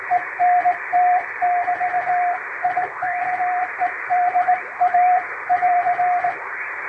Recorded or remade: remade